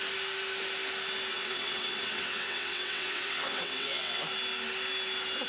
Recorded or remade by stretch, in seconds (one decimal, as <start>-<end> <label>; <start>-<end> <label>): 0.0-1.3 recorded; 1.3-4.2 remade; 4.2-5.5 recorded